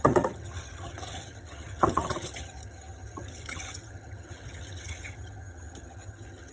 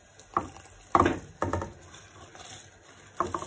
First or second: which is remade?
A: first